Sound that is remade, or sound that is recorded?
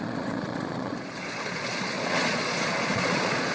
remade